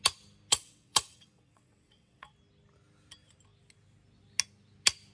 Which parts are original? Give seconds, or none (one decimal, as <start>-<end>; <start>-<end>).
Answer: 0.0-0.5; 2.3-5.1